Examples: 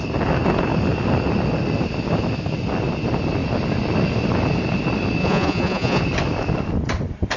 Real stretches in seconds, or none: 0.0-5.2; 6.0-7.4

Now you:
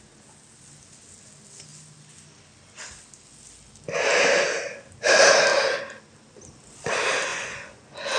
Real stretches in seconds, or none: 0.0-7.3

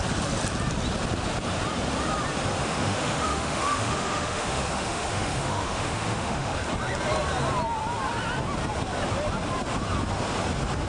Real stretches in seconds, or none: 0.0-2.6; 6.6-10.9

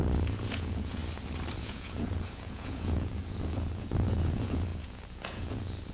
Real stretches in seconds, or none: 1.0-1.6

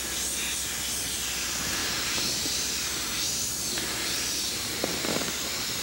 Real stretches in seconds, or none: 0.0-1.8; 5.3-5.8

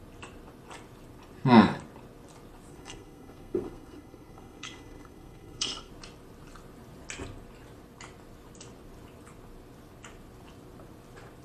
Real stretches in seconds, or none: 0.0-2.7; 5.9-11.4